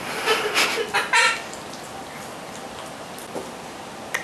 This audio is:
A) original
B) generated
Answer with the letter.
A